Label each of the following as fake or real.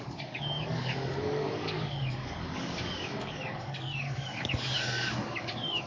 fake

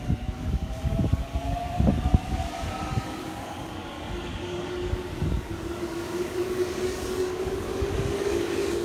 fake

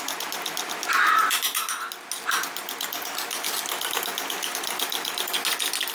real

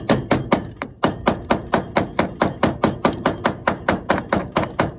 real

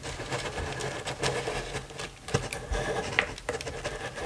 real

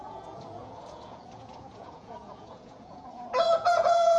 fake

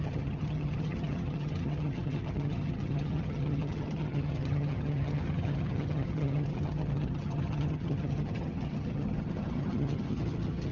fake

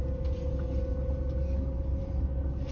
real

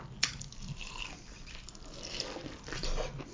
real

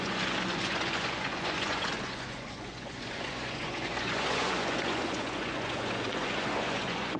fake